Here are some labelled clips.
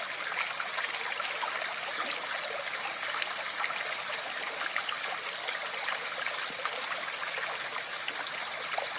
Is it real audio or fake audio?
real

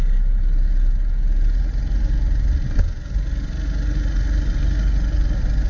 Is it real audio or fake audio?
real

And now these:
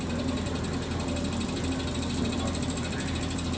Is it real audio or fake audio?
real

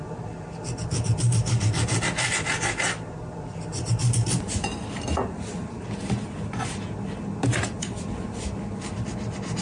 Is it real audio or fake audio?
real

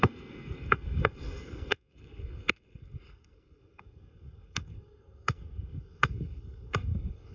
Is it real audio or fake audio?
fake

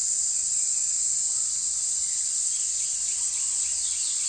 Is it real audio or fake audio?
fake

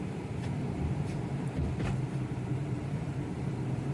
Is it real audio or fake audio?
fake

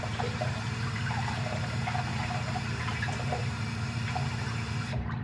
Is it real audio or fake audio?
fake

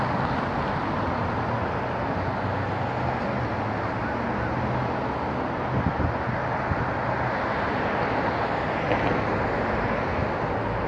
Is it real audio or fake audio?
real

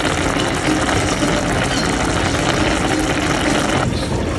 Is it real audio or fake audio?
real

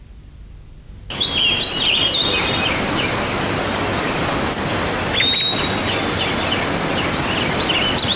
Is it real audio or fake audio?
real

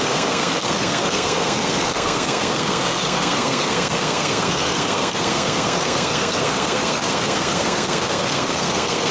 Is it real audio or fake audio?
fake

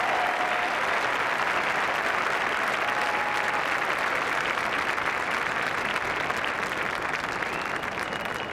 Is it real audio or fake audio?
real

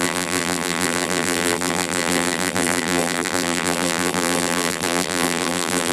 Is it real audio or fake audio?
fake